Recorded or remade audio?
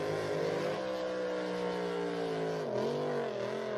recorded